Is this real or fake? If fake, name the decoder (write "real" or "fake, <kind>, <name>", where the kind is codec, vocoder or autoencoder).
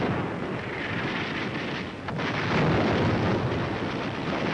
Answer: real